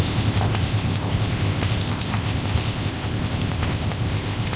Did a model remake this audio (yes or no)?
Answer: yes